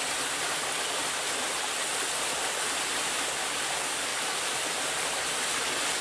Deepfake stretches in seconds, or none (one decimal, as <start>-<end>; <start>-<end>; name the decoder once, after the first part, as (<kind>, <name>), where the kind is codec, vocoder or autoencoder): 4.1-4.8 (vocoder, BigVGAN v2)